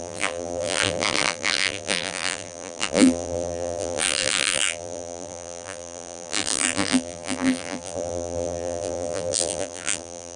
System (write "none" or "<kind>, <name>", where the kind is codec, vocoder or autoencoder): vocoder, BigVGAN v2